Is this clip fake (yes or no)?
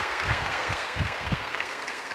yes